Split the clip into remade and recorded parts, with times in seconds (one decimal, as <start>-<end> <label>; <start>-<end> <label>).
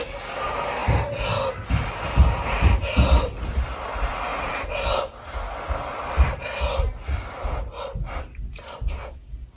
0.0-9.6 recorded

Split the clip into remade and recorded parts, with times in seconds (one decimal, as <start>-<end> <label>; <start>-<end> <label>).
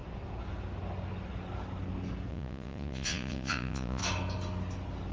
0.0-2.3 recorded; 2.3-4.0 remade; 4.0-5.1 recorded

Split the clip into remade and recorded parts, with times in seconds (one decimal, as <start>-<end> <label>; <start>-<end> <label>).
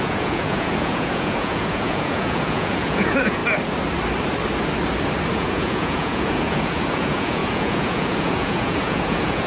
0.0-3.4 remade; 3.4-5.3 recorded; 5.3-9.5 remade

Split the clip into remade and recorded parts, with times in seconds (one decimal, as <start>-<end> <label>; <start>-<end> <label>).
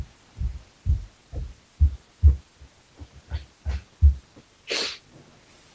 0.0-5.7 recorded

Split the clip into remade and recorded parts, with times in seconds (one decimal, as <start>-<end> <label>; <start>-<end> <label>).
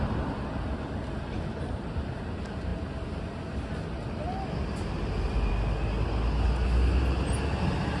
0.0-8.0 recorded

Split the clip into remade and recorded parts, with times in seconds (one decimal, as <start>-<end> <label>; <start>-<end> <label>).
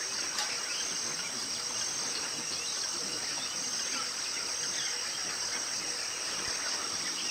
0.0-7.3 recorded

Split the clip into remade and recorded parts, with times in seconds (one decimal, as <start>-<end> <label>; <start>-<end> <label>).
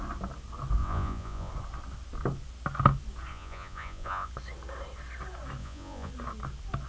0.0-0.8 recorded; 0.8-1.5 remade; 1.5-3.3 recorded; 3.3-4.3 remade; 4.3-5.6 recorded; 5.6-6.1 remade; 6.1-6.9 recorded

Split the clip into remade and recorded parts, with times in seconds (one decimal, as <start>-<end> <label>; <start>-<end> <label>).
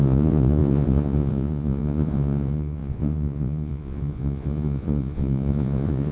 0.0-6.1 remade